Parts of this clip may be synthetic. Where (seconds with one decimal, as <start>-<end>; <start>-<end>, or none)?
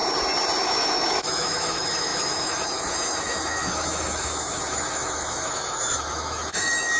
0.6-7.0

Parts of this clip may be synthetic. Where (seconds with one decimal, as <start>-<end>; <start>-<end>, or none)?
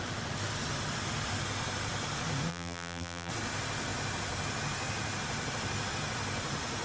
2.5-3.3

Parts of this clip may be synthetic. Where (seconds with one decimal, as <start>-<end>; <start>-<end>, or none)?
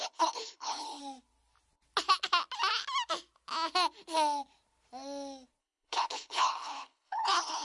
0.0-1.0; 5.6-7.6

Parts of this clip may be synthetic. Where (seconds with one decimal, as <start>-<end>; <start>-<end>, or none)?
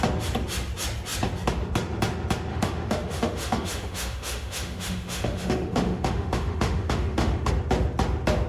2.5-7.5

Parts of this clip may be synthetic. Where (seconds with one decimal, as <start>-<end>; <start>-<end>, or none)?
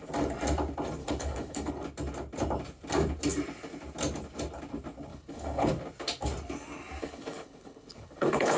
1.0-1.7; 5.1-5.7; 7.0-8.6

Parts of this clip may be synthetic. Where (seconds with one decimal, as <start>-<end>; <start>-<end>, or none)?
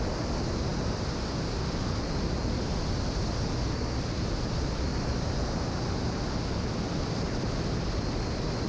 4.9-6.3